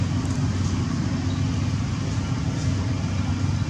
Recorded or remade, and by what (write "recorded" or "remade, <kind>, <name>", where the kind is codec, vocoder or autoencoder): recorded